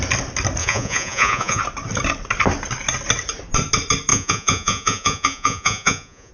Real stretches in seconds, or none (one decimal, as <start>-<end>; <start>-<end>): 0.0-0.6; 1.6-4.1